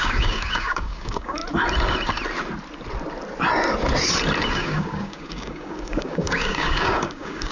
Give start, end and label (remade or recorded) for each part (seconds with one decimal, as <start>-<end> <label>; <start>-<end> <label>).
0.0-1.4 remade; 1.4-4.5 recorded; 4.5-7.5 remade